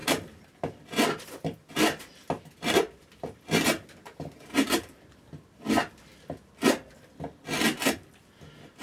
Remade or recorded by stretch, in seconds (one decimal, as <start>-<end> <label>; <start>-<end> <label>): 0.0-8.8 recorded